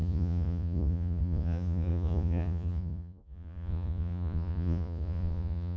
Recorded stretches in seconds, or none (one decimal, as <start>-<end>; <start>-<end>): none